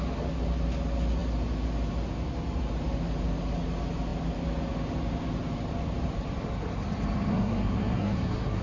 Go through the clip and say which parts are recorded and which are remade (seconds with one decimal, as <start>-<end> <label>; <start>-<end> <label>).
0.0-7.3 recorded; 7.3-8.6 remade